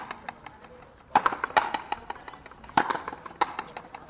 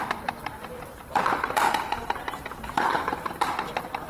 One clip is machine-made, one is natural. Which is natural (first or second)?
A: first